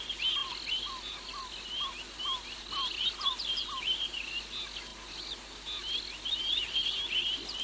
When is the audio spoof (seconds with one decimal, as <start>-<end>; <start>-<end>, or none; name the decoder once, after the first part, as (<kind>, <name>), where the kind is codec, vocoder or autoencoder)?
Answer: none